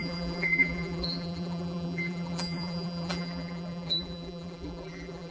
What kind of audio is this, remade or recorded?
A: remade